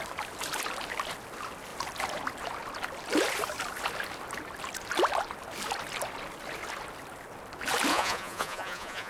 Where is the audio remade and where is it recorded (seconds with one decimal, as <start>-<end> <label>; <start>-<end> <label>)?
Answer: 0.0-7.9 recorded; 7.9-9.1 remade